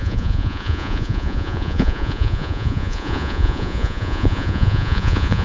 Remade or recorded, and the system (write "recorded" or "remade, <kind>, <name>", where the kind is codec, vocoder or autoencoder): remade, vocoder, Vocos